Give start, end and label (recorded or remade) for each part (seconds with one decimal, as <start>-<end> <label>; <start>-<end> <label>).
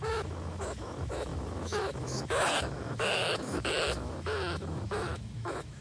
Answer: 0.0-5.8 remade